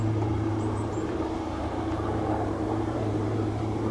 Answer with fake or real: fake